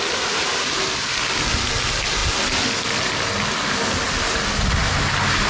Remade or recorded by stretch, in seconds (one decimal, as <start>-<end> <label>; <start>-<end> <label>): 0.0-5.5 recorded